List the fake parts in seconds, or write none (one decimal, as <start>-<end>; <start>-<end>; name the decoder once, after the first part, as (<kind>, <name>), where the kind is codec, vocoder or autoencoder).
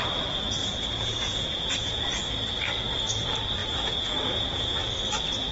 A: 0.6-2.0 (vocoder, Vocos); 3.6-4.9